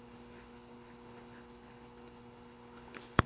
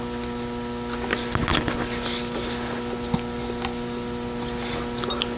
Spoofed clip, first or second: first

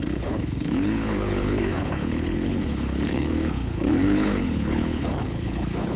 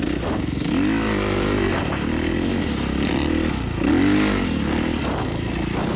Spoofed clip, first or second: first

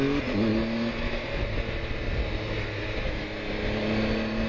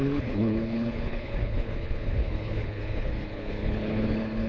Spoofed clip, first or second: second